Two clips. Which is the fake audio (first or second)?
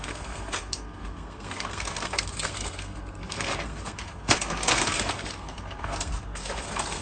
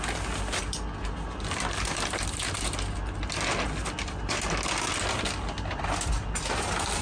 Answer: first